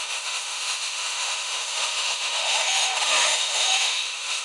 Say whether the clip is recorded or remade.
remade